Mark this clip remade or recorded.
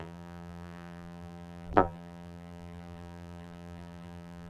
remade